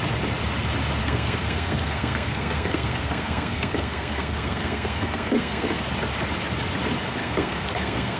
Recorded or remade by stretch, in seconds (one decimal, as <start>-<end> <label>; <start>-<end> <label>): 0.0-1.0 recorded; 1.0-5.9 remade; 5.9-7.2 recorded; 7.2-8.2 remade